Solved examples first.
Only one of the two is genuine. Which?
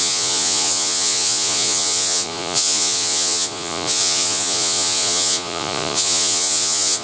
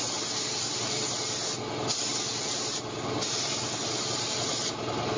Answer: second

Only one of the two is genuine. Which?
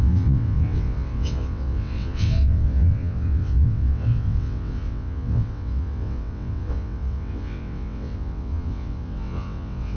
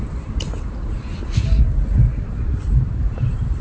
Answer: second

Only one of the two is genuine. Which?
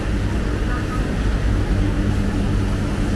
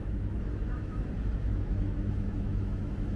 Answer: first